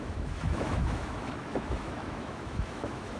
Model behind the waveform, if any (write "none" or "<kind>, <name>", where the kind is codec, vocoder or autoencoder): autoencoder, DAC-VAE